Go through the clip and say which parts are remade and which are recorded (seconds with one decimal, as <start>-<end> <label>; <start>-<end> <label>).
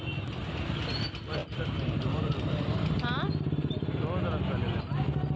0.0-1.4 recorded; 1.4-4.0 remade; 4.0-5.4 recorded